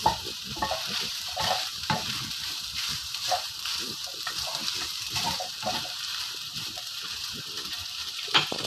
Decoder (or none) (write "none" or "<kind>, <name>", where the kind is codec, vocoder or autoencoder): vocoder, BigVGAN v2